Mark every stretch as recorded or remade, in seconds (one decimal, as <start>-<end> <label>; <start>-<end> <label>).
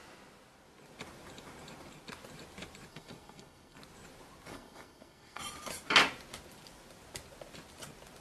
0.0-2.9 recorded; 2.9-3.8 remade; 3.8-4.5 recorded; 4.5-5.4 remade; 5.4-8.2 recorded